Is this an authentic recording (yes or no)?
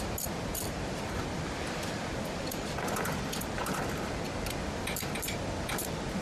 no